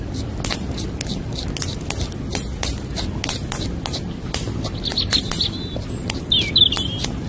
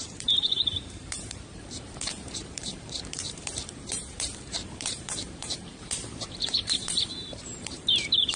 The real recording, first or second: first